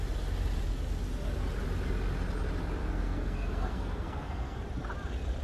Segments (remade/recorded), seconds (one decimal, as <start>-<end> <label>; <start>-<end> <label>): 0.0-2.8 recorded; 2.8-4.6 remade; 4.6-5.4 recorded